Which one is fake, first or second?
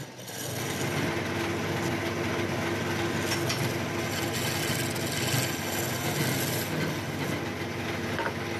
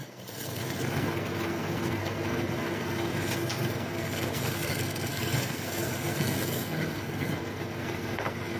second